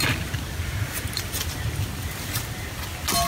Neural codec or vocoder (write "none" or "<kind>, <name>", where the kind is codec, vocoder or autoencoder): none